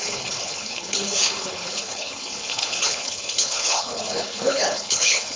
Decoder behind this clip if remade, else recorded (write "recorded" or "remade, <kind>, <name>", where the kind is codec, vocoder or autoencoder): remade, codec, HILCodec